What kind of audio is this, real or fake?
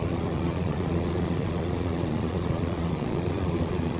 fake